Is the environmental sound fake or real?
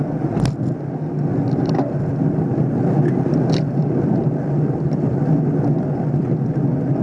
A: real